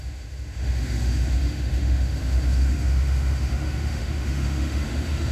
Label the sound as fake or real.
fake